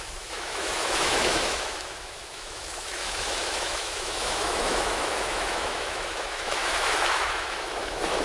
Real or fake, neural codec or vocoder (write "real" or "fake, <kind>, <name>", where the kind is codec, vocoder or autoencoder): fake, autoencoder, DAC-VAE